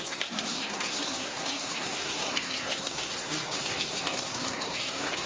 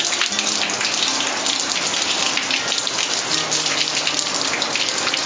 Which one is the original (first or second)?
second